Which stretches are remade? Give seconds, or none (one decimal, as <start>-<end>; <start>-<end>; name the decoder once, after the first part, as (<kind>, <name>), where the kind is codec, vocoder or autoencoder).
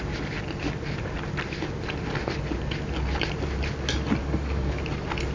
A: 4.2-4.8 (codec, DAC)